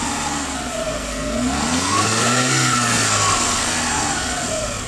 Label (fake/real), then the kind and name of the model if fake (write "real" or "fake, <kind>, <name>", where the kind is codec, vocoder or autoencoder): fake, codec, SNAC